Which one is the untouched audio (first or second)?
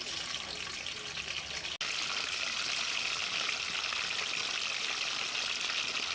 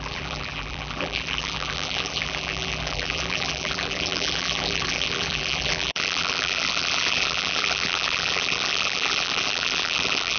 first